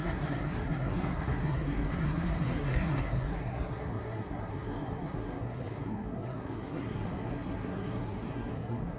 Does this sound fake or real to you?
fake